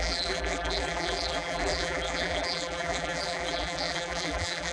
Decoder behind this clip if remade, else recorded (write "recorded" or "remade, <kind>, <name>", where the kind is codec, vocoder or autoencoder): remade, vocoder, BigVGAN v2